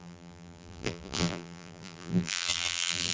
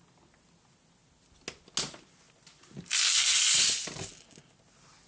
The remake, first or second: first